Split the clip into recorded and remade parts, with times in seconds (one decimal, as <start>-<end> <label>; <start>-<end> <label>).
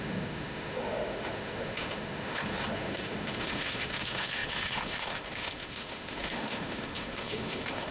0.0-7.9 remade